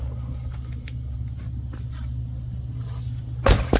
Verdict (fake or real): real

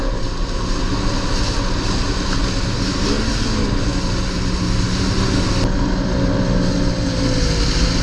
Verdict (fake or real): real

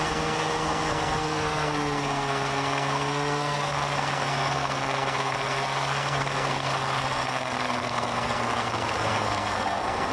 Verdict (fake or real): fake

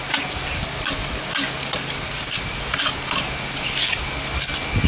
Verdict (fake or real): real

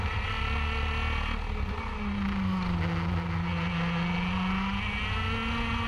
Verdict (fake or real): real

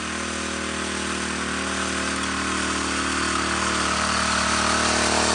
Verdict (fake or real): real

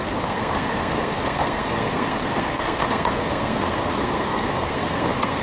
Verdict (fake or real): fake